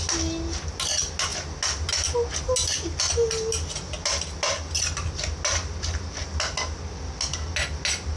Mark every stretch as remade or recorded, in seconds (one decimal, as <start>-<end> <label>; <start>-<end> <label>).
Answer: 0.0-8.2 recorded